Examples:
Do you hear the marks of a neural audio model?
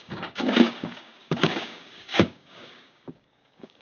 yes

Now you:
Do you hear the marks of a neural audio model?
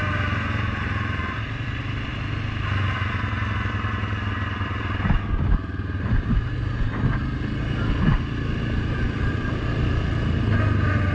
no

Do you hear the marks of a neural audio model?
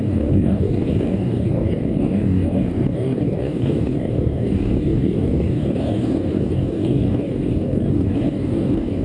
yes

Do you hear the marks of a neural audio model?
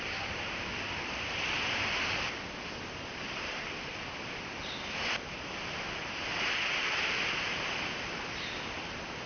no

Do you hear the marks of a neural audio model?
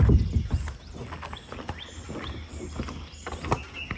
no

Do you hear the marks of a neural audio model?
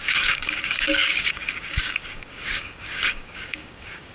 yes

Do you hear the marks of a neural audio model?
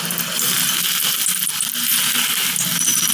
no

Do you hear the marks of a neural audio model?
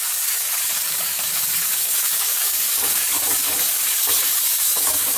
yes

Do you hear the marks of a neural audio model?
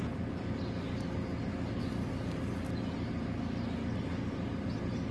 no